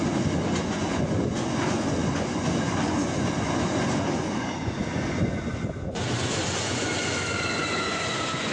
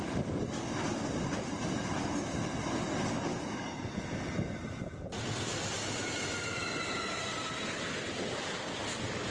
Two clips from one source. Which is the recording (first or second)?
second